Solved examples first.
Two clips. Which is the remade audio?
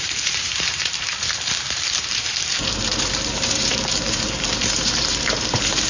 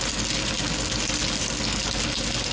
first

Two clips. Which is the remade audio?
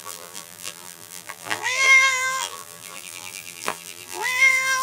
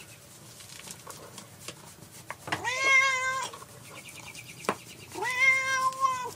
first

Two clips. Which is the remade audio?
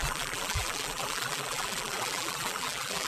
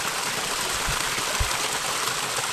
first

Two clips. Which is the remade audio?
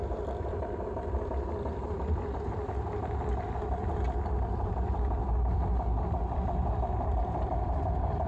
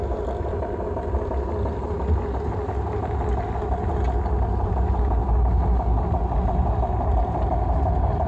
first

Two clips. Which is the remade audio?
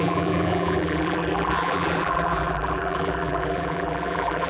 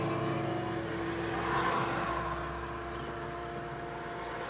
first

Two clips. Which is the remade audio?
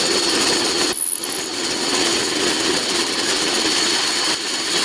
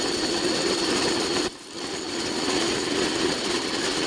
second